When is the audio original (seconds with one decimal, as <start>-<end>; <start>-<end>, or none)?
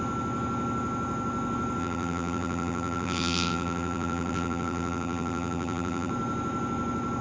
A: 0.0-1.8; 6.1-7.2